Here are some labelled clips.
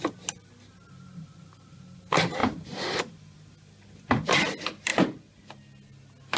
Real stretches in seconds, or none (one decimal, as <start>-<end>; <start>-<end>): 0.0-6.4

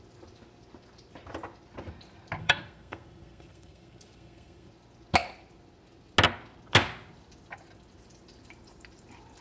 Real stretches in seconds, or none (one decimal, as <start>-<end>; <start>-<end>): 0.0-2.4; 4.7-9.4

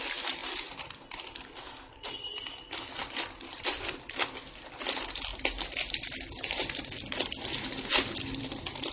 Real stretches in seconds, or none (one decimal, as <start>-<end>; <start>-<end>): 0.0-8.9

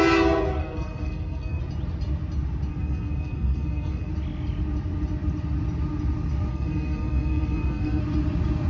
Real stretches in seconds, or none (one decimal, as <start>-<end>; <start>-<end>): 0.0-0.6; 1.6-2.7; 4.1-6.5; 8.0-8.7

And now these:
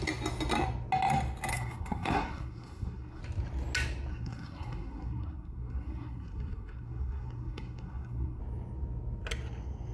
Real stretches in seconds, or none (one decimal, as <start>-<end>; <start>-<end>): 0.0-1.5; 3.2-4.1; 8.4-9.9